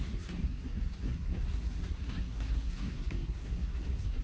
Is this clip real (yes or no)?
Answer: no